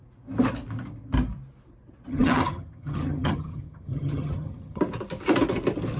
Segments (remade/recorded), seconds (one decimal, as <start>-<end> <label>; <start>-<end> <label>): 0.0-2.1 recorded; 2.1-4.8 remade; 4.8-6.0 recorded